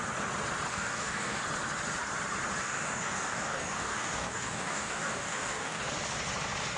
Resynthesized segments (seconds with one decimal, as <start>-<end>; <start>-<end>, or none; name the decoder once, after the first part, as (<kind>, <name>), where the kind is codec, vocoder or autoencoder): 0.7-1.4 (codec, DAC); 2.6-5.8